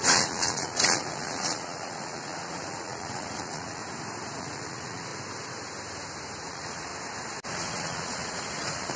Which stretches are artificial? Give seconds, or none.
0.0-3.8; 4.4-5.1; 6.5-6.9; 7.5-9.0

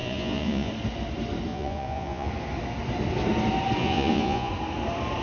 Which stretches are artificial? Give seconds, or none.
0.0-0.7; 1.5-2.3; 3.8-4.5

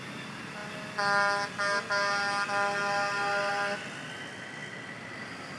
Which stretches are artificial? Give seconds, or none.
none

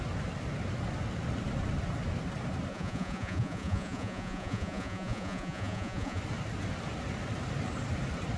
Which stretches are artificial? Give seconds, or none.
2.7-6.2

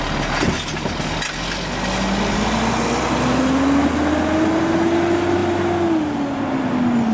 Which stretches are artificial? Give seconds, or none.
none

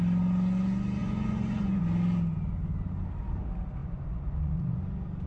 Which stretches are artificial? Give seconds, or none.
1.0-1.8; 3.8-4.8